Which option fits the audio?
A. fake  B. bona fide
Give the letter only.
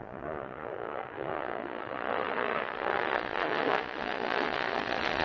A